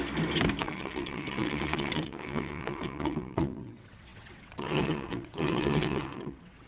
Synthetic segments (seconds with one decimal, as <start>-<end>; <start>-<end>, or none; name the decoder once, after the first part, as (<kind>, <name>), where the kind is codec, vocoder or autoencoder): 0.6-6.7 (vocoder, WaveNeXt)